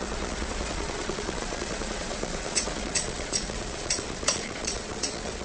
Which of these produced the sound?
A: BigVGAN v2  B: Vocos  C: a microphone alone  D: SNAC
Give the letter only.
B